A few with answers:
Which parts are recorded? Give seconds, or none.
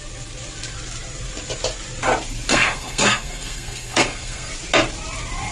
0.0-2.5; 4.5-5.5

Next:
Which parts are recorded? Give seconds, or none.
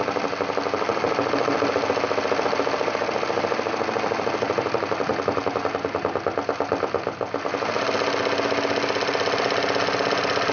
0.0-10.5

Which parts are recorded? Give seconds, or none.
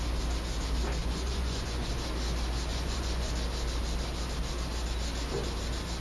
0.0-1.0; 1.9-2.7; 3.3-6.0